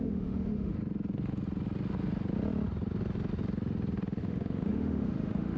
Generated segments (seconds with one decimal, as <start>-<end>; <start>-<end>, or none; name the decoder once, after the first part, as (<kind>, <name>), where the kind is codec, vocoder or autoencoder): 0.0-0.8 (autoencoder, DAC-VAE); 4.2-5.6